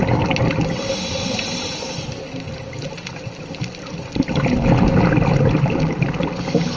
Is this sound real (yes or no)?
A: yes